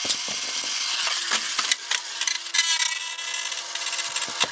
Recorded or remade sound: recorded